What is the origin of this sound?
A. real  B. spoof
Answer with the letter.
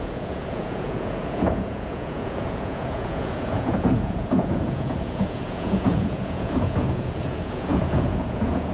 B